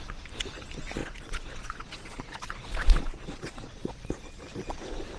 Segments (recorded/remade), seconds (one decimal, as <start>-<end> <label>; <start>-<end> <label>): 0.0-1.0 recorded; 1.0-3.9 remade; 3.9-5.2 recorded